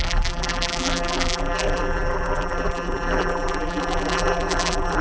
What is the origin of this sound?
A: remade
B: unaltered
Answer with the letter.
A